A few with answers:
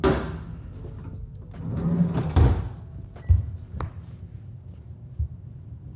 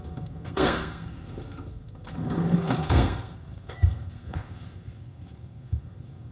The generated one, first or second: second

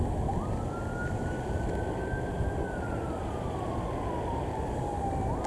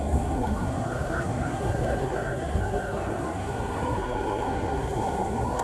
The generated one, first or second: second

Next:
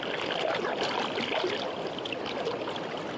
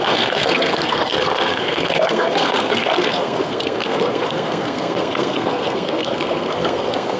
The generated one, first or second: second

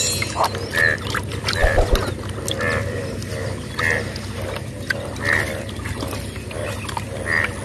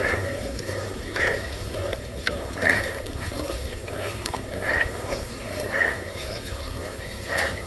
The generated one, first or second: second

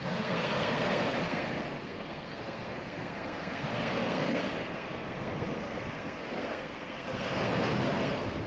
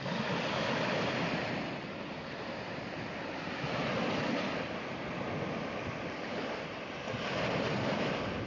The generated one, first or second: first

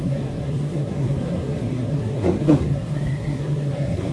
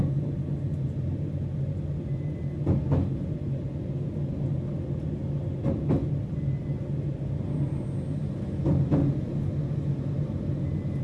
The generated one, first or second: first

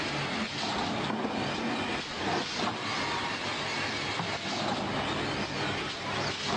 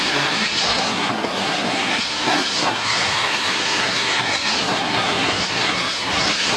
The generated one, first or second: second